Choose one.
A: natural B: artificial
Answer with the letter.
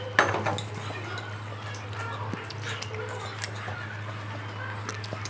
A